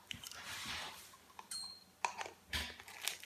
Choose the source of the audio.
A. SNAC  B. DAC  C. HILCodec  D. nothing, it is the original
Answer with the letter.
D